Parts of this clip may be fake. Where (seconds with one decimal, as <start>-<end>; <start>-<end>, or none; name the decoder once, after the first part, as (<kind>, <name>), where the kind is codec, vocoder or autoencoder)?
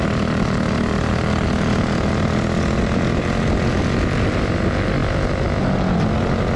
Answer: none